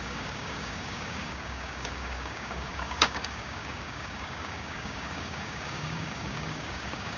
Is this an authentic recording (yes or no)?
no